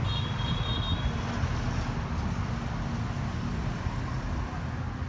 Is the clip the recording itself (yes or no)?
yes